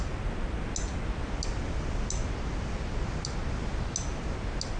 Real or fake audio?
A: real